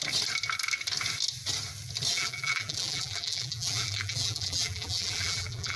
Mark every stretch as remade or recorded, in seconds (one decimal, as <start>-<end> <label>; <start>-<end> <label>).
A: 0.0-2.1 recorded; 2.1-5.8 remade